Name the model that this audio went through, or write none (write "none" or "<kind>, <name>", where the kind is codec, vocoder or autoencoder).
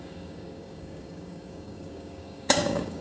codec, DAC